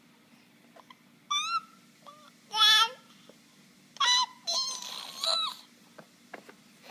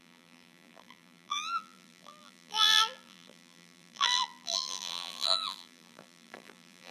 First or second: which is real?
first